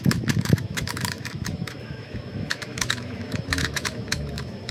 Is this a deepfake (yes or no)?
yes